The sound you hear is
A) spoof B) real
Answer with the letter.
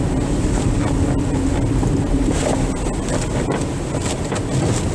B